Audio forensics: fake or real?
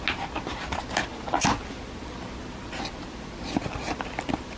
real